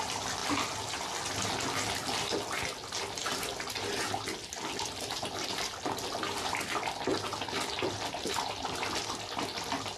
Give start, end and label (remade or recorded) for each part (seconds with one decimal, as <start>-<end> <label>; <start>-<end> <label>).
0.0-0.4 remade; 0.4-4.8 recorded; 4.8-7.1 remade; 7.1-8.1 recorded; 8.1-10.0 remade

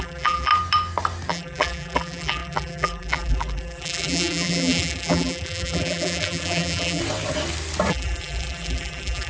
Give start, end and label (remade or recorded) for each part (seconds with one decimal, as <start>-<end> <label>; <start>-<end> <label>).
0.0-0.5 remade; 0.5-1.3 recorded; 1.3-7.0 remade; 7.0-7.9 recorded; 7.9-9.3 remade

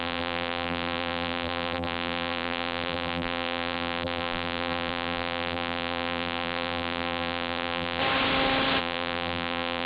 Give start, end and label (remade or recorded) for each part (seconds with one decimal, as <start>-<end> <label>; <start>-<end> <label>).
0.0-8.0 remade; 8.0-8.8 recorded; 8.8-9.9 remade

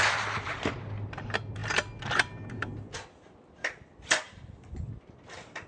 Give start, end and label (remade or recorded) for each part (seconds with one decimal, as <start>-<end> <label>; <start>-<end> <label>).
0.0-5.7 remade

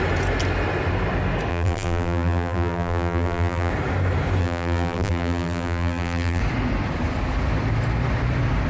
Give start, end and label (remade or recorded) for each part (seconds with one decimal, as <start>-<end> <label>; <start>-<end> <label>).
0.0-1.5 recorded; 1.5-3.7 remade; 3.7-4.4 recorded; 4.4-6.4 remade; 6.4-8.7 recorded

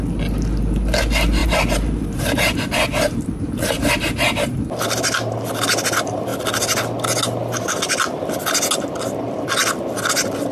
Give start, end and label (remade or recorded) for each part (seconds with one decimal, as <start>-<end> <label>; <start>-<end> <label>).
0.0-1.4 recorded; 1.4-4.6 remade; 4.6-10.5 recorded

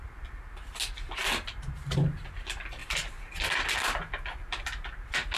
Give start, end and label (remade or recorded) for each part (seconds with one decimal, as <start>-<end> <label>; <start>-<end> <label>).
0.0-1.2 recorded; 1.2-2.2 remade; 2.2-2.8 recorded; 2.8-3.3 remade; 3.3-5.4 recorded

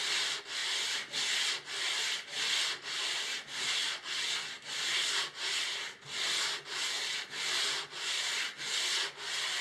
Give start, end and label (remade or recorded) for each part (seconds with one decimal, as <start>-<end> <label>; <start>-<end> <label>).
0.0-9.6 recorded